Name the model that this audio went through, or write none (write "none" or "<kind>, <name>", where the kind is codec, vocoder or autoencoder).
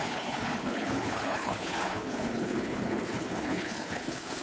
codec, HILCodec